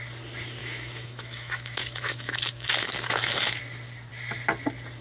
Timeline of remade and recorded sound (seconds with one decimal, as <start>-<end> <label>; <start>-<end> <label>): 0.0-0.6 recorded; 0.6-3.6 remade; 3.6-5.0 recorded